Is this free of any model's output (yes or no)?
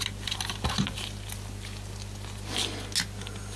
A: yes